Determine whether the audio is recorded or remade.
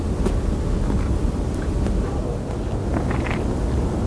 recorded